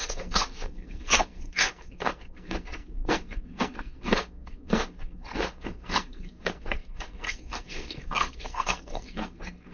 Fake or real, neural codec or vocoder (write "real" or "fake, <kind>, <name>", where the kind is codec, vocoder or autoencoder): fake, codec, SNAC